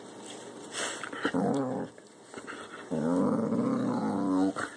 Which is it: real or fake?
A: real